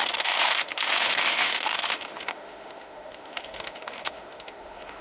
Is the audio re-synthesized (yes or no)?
yes